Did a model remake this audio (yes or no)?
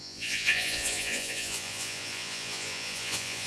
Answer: yes